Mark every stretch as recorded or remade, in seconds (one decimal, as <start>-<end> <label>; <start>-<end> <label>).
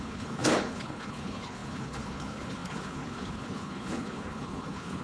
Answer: 0.0-5.0 remade